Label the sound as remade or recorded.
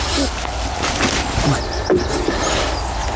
recorded